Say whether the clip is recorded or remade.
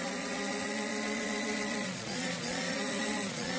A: remade